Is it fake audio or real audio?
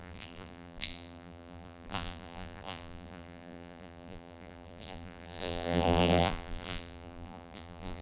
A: fake